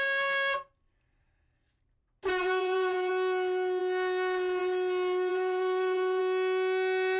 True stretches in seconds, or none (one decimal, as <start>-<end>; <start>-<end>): 0.0-2.4; 3.1-5.3; 6.2-7.2